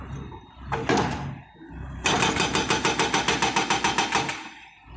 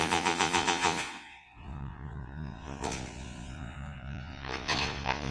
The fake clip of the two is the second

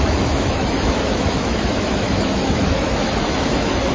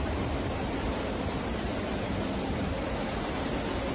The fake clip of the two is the first